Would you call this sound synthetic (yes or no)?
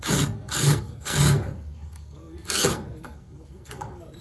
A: yes